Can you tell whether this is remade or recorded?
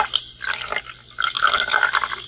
recorded